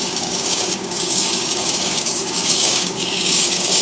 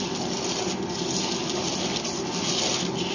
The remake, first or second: first